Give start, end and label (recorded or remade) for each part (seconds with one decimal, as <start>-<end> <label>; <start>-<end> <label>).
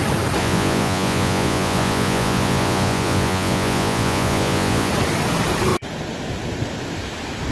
0.0-0.4 recorded; 0.4-4.9 remade; 4.9-7.5 recorded